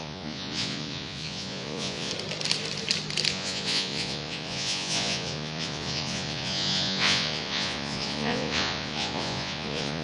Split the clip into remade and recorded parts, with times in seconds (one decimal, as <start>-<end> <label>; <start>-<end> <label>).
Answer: 0.0-2.1 remade; 2.1-3.3 recorded; 3.3-10.0 remade